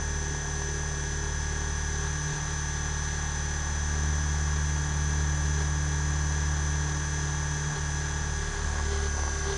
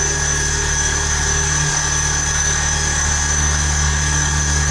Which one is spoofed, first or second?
second